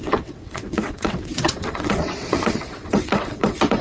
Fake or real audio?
fake